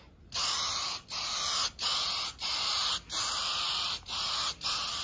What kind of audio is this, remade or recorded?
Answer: recorded